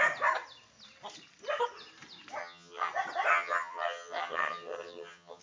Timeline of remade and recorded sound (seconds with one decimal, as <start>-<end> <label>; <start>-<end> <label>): 0.0-2.4 recorded; 2.4-2.9 remade; 2.9-3.3 recorded; 3.3-5.4 remade